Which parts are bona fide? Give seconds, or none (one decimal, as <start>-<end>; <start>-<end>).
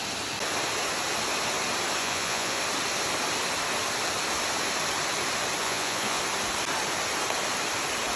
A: 0.0-2.0; 2.6-5.6; 6.2-8.2